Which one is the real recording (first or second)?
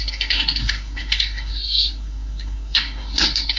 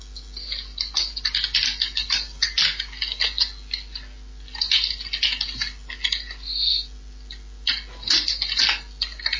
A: second